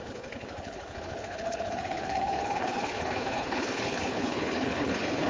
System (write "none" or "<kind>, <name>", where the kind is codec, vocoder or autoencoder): codec, HILCodec